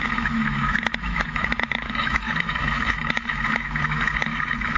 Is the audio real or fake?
fake